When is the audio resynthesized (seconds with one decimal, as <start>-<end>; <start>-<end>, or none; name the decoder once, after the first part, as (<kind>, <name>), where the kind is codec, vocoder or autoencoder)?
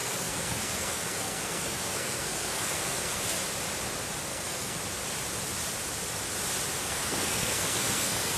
0.0-3.2 (codec, SNAC); 4.3-4.8; 6.8-8.4